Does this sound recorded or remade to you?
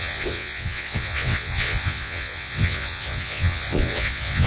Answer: remade